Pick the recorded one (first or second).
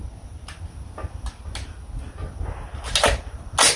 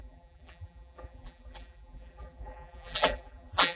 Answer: first